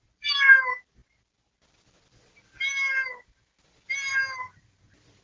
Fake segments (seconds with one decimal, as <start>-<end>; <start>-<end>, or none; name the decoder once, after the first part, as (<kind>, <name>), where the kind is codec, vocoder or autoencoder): none